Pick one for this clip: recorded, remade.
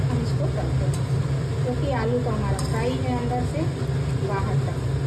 recorded